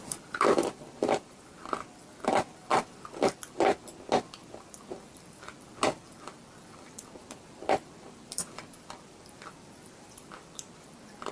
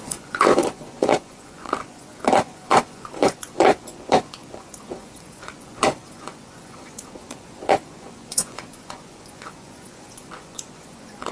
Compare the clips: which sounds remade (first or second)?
second